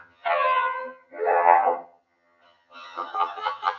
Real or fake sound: fake